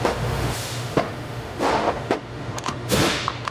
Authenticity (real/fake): fake